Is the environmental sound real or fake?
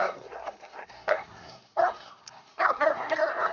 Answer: fake